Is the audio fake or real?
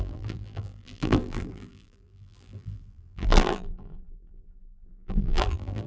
fake